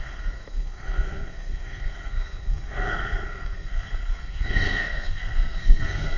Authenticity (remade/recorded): remade